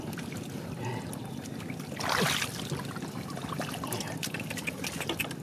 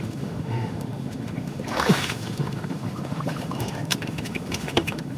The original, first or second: first